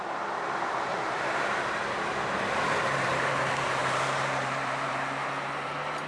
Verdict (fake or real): fake